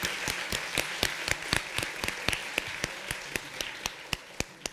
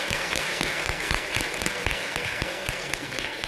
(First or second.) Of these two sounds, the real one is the first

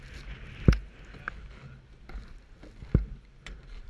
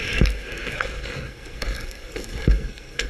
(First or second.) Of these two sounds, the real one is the first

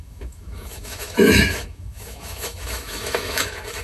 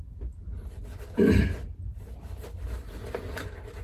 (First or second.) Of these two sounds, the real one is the second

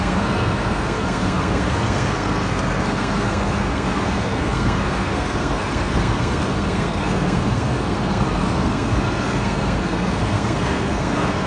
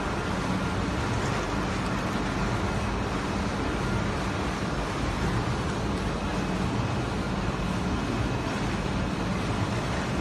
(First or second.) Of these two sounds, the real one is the second